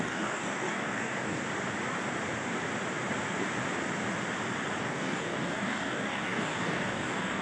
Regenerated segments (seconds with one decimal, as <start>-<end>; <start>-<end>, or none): 0.0-1.4; 4.8-7.4